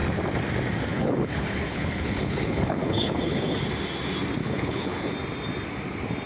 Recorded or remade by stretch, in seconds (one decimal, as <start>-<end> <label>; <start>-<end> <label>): 0.0-0.9 recorded; 0.9-3.7 remade; 3.7-4.4 recorded; 4.4-5.1 remade; 5.1-6.3 recorded

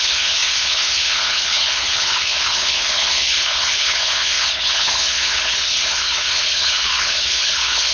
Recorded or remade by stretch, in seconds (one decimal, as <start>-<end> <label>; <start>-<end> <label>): 0.0-7.9 remade

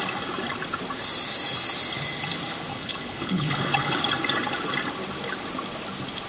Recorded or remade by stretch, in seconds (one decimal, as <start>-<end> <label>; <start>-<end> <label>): 0.0-2.7 recorded; 2.7-4.0 remade; 4.0-6.3 recorded

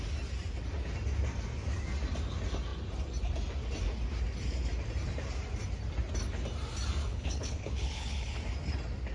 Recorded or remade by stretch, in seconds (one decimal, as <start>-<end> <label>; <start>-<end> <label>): 0.0-7.0 recorded; 7.0-8.4 remade; 8.4-9.1 recorded